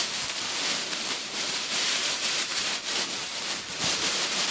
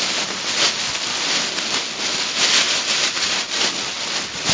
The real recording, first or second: second